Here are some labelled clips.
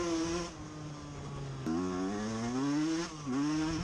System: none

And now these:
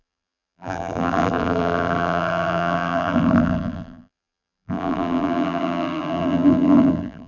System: vocoder, BigVGAN v2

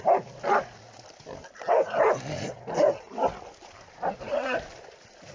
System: none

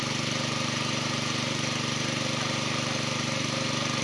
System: none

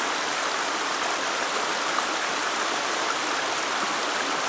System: none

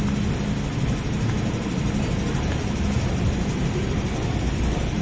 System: none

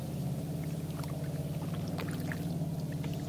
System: none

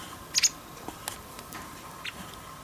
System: none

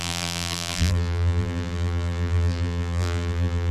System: vocoder, BigVGAN v2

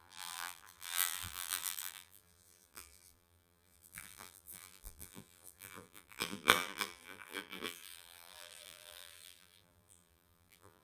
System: vocoder, BigVGAN v2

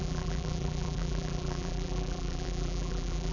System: vocoder, BigVGAN v2